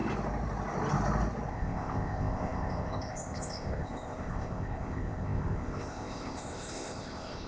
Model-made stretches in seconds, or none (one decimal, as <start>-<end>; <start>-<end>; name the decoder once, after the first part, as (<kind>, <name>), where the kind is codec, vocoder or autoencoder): 1.5-7.5 (codec, ZipCodec)